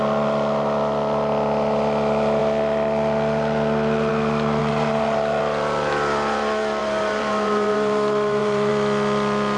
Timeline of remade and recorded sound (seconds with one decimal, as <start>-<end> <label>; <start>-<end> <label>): 0.0-4.6 recorded; 4.6-5.4 remade; 5.4-6.8 recorded; 6.8-8.7 remade; 8.7-9.6 recorded